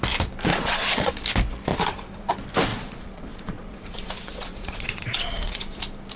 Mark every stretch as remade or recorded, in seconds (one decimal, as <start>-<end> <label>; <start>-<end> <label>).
0.0-0.5 recorded; 0.5-1.1 remade; 1.1-1.7 recorded; 1.7-2.3 remade; 2.3-2.7 recorded; 2.7-5.8 remade; 5.8-6.2 recorded